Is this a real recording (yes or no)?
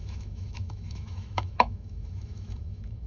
no